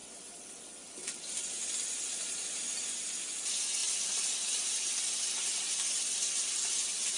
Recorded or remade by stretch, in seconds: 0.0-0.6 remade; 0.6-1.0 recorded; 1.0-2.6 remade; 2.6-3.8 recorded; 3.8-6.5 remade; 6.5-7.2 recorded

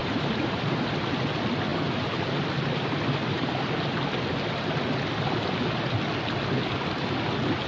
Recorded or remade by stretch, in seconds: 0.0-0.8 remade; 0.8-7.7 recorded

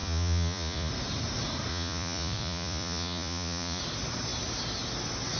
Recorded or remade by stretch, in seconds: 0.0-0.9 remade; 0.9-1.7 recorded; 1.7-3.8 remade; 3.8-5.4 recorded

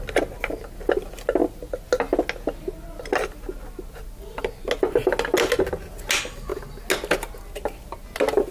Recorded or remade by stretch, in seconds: 0.0-8.5 recorded

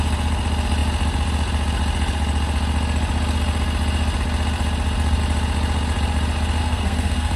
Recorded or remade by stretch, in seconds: 0.0-6.6 recorded; 6.6-7.4 remade